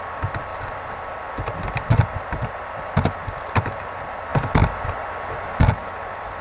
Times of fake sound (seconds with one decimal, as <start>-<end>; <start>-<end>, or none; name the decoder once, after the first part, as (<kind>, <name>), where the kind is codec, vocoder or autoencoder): none